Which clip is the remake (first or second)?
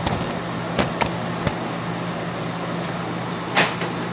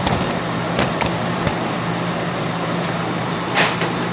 second